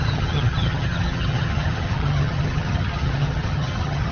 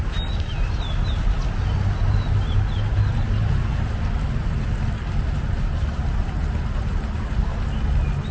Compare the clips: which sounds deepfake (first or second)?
first